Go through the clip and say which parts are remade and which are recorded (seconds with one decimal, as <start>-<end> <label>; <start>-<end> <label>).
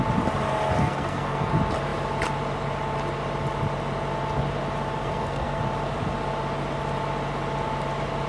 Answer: 0.0-0.8 recorded; 0.8-1.5 remade; 1.5-5.0 recorded; 5.0-5.6 remade; 5.6-8.3 recorded